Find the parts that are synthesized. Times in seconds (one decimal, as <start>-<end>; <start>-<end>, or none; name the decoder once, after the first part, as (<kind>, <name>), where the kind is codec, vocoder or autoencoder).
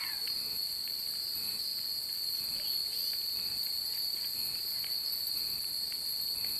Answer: none